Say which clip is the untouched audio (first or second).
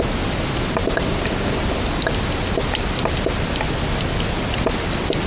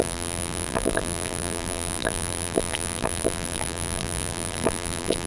first